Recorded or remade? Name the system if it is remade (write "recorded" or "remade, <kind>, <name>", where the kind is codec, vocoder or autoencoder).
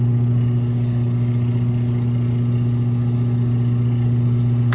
recorded